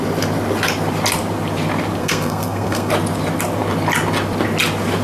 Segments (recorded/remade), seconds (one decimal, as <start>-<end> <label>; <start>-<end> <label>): 0.0-2.0 recorded; 2.0-2.9 remade; 2.9-5.0 recorded